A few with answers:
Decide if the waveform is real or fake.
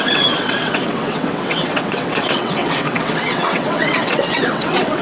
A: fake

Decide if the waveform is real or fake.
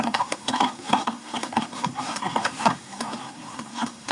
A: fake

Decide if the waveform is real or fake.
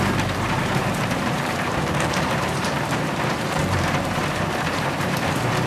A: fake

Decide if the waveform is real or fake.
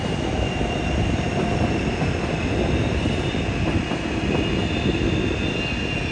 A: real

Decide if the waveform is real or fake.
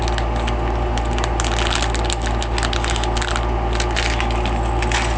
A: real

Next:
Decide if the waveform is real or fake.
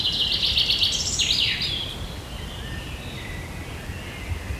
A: real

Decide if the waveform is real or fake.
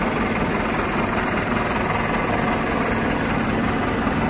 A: real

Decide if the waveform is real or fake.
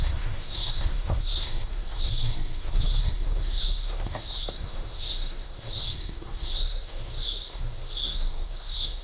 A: fake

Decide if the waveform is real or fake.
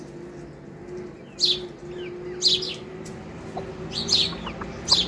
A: real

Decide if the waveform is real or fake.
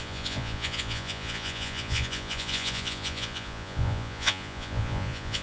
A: fake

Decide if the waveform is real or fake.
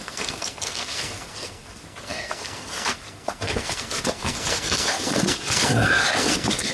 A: fake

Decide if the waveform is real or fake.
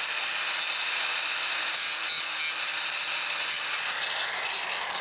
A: real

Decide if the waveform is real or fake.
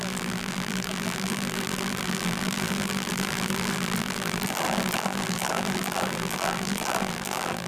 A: fake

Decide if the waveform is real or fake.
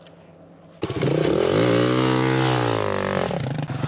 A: real